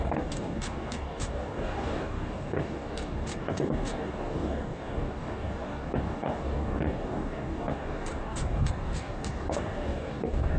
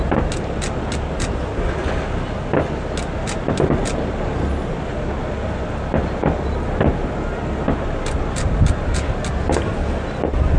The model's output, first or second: first